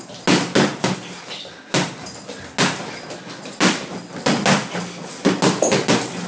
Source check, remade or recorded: recorded